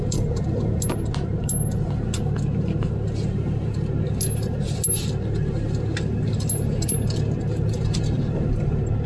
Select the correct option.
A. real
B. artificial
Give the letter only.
A